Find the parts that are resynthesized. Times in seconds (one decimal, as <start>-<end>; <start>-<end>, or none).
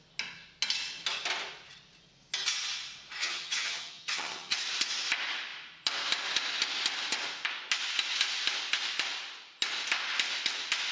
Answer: 3.2-4.6